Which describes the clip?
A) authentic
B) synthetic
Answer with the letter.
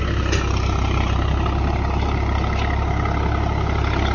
A